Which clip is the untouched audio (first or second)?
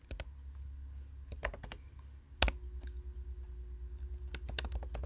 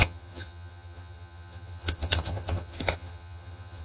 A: first